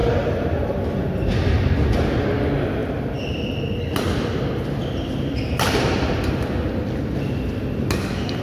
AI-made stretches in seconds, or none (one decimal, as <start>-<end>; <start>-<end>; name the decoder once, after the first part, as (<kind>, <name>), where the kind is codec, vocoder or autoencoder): 0.0-1.0 (vocoder, BigVGAN v2)

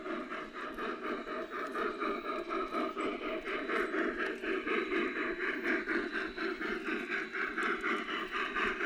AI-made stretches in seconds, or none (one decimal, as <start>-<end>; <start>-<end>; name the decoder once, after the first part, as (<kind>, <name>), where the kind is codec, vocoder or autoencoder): 0.0-8.9 (vocoder, BigVGAN v2)

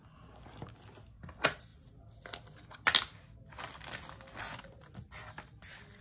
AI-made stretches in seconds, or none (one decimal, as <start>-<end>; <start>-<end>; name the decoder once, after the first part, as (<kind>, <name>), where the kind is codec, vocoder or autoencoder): none

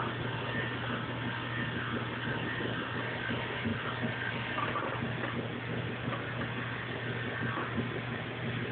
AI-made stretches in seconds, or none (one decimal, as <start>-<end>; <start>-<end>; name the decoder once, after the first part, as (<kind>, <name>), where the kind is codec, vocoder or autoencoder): none

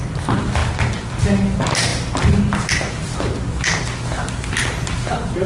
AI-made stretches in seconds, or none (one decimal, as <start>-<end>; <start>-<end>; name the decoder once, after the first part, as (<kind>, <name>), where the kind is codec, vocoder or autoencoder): none

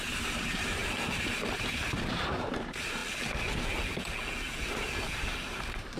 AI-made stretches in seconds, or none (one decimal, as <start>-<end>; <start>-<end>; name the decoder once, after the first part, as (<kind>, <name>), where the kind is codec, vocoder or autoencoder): 0.0-0.8 (vocoder, BigVGAN v2); 1.5-3.0; 5.0-6.0